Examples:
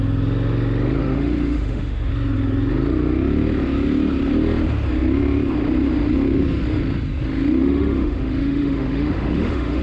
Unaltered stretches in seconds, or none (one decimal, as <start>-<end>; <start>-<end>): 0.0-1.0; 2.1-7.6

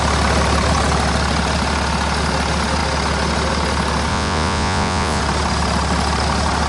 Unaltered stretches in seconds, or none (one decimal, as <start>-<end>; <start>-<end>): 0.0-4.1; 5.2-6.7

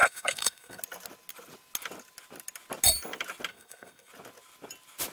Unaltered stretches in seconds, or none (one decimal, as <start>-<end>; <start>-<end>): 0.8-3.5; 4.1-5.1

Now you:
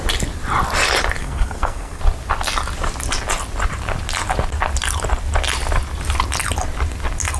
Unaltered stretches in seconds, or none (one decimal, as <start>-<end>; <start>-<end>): 0.0-1.2; 2.0-7.4

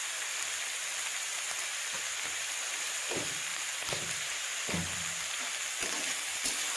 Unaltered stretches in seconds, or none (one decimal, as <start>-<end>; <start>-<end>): 0.0-3.5; 4.6-6.8

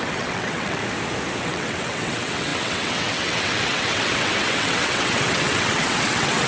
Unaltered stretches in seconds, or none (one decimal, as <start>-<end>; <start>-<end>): 0.8-1.4